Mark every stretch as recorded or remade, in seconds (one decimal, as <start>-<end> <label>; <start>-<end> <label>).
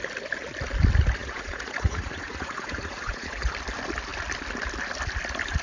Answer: 0.0-1.2 recorded; 1.2-3.5 remade; 3.5-5.6 recorded